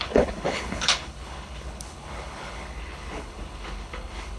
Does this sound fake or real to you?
fake